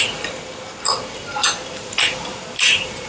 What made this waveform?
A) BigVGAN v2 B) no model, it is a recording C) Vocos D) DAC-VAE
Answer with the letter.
A